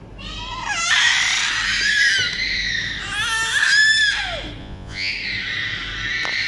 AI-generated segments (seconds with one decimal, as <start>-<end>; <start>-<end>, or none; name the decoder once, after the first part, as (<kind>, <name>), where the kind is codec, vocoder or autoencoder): 4.6-5.1 (vocoder, Vocos)